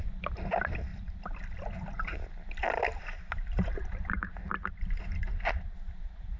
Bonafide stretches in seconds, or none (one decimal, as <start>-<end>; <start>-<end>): 0.0-0.9; 2.8-6.4